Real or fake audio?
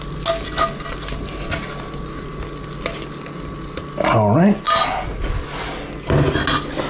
real